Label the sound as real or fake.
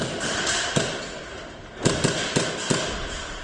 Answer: real